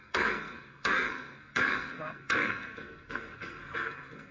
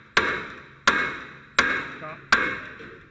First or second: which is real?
second